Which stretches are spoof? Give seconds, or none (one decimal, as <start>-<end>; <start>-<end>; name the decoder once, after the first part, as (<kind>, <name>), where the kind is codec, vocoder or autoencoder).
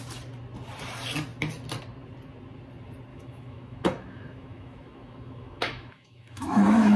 3.1-7.0 (autoencoder, DAC-VAE)